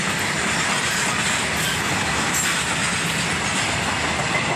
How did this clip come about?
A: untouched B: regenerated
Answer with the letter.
A